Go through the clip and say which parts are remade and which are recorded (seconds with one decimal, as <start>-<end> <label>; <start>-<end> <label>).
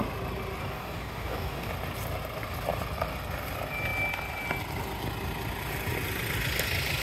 0.0-0.6 recorded; 0.6-1.7 remade; 1.7-7.0 recorded